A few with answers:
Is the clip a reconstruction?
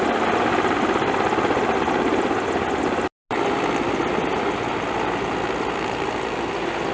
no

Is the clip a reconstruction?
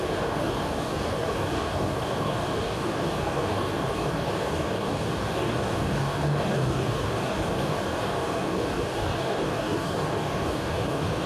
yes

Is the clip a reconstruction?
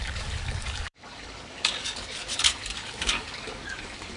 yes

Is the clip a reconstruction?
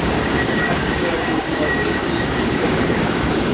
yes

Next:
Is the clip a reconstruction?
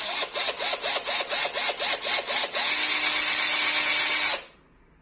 no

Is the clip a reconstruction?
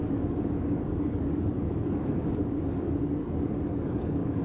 yes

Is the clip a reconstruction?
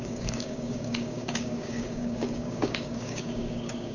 yes